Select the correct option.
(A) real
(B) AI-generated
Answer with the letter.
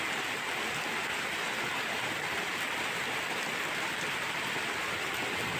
A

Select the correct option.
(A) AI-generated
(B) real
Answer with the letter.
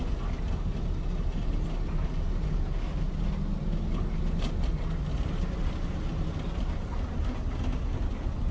B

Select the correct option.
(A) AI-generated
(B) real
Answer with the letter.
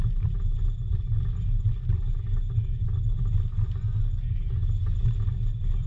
B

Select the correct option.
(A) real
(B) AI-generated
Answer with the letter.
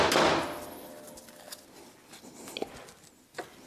A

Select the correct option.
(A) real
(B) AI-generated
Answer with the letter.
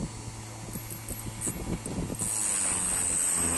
A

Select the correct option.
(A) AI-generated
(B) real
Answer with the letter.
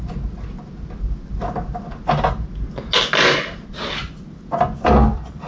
B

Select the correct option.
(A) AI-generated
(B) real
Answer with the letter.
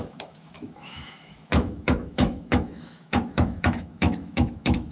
A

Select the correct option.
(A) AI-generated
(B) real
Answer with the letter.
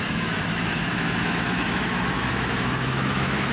A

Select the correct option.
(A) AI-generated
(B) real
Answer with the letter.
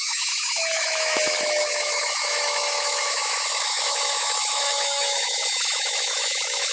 A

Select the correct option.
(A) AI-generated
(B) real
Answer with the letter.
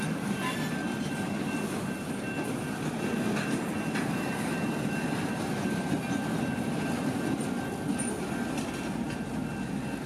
B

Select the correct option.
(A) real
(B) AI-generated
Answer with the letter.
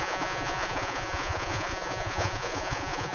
B